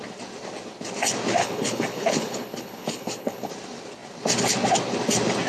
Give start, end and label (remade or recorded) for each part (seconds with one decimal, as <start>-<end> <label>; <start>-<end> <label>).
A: 0.0-1.4 recorded; 1.4-3.5 remade; 3.5-5.5 recorded